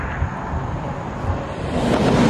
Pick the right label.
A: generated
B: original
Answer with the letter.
A